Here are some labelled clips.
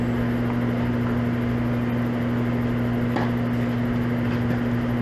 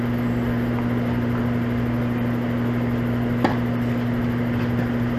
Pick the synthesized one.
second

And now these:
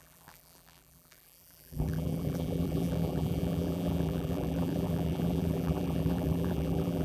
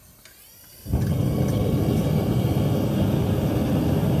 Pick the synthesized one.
first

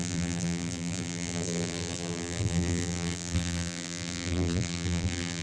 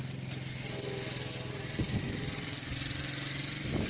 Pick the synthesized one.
first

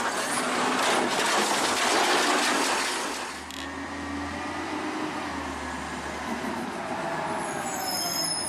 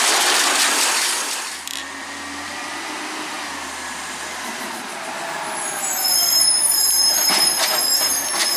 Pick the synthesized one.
second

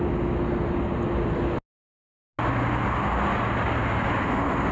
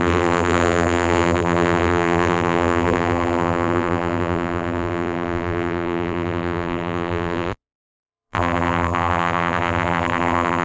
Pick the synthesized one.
second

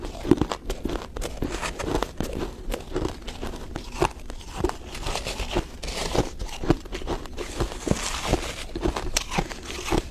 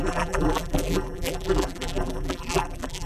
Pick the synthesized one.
second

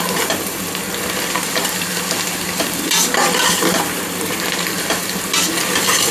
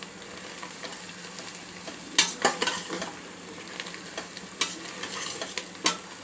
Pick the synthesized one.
first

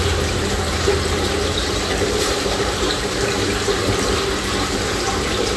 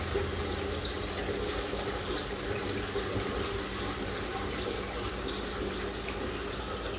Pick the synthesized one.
first